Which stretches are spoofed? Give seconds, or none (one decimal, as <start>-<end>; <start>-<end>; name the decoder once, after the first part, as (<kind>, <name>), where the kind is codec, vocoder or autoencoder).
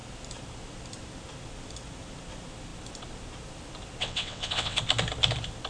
4.0-4.8 (vocoder, WaveNeXt)